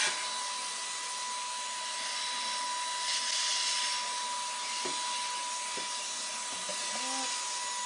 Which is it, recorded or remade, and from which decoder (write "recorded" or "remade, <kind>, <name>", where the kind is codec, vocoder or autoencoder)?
recorded